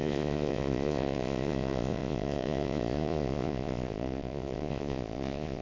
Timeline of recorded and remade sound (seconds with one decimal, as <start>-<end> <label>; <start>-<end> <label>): 0.0-5.6 remade